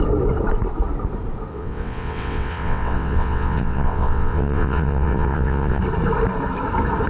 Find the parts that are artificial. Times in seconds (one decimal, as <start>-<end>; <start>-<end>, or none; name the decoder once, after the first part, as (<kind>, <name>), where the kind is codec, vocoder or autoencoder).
1.5-5.8 (vocoder, WaveNeXt)